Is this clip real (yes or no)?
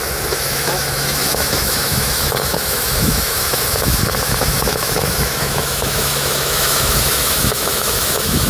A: no